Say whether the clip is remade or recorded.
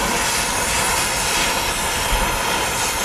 recorded